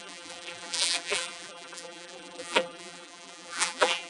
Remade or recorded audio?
remade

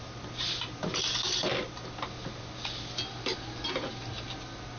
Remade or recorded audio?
recorded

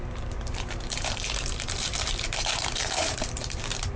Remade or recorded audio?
remade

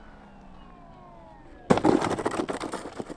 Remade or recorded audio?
recorded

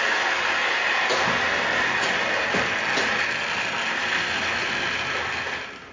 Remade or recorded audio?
recorded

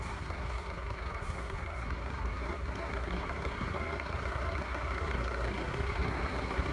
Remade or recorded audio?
remade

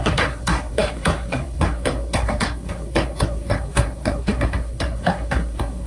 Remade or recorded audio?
remade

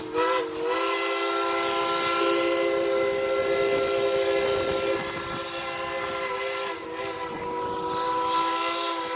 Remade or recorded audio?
recorded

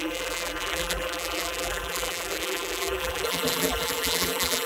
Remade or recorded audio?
remade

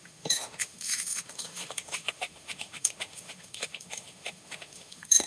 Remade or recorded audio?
remade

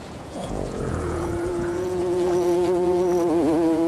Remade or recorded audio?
remade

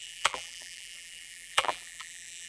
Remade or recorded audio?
remade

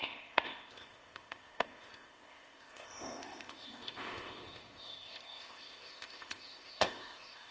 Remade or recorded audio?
remade